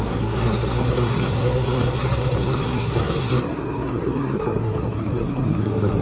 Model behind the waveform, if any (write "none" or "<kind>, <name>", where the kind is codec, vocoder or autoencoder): codec, SNAC